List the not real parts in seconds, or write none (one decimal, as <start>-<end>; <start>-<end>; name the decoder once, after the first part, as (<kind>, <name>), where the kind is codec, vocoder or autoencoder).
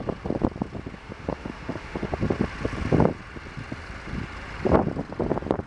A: 1.0-2.1 (autoencoder, DAC-VAE)